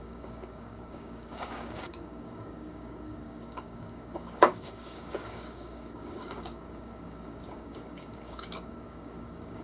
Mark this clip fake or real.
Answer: fake